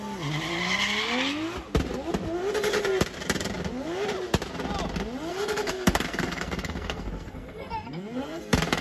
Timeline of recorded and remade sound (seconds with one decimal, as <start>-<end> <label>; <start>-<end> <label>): 0.0-5.3 recorded; 5.3-8.8 remade

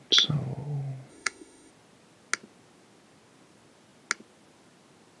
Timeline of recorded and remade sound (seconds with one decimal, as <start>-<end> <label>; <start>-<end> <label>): 0.0-1.1 recorded; 1.1-1.7 remade; 1.7-5.2 recorded

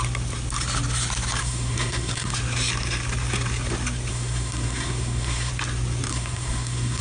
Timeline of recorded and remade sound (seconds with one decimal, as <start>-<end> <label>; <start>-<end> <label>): 0.0-1.4 recorded; 1.4-2.3 remade; 2.3-4.1 recorded; 4.1-5.5 remade; 5.5-6.1 recorded; 6.1-7.0 remade

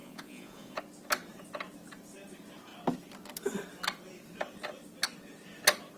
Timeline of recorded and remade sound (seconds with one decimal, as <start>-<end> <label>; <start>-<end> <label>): 0.0-0.8 remade; 0.8-6.0 recorded

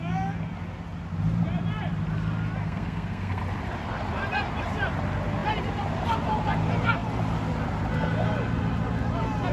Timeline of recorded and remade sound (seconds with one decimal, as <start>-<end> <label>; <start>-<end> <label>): 0.0-2.6 recorded; 2.6-3.4 remade; 3.4-9.5 recorded

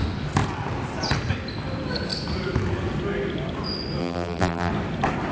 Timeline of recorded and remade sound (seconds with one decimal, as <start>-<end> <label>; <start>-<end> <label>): 0.0-4.0 recorded; 4.0-4.7 remade; 4.7-5.3 recorded

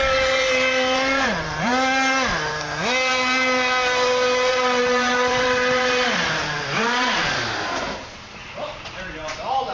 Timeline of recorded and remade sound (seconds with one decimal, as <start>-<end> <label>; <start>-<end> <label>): 0.0-1.7 remade; 1.7-4.5 recorded; 4.5-9.7 remade